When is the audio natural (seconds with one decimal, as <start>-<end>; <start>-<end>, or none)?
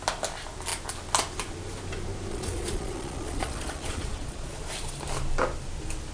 0.0-2.3; 4.6-6.1